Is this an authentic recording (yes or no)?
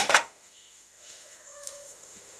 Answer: no